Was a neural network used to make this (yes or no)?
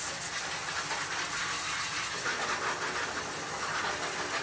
no